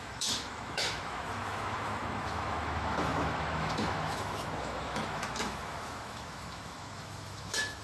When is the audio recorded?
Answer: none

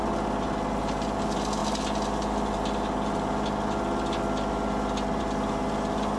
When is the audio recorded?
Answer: 0.0-6.2

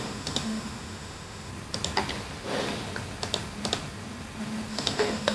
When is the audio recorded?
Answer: 1.5-4.7

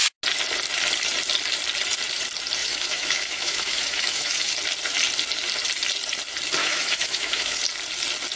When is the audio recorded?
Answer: 0.0-2.6; 4.5-6.6; 7.6-8.4